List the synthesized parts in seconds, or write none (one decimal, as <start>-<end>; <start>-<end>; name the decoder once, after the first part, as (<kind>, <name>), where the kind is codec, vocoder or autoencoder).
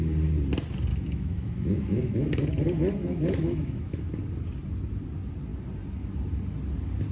0.9-2.5 (autoencoder, DAC-VAE); 3.0-4.1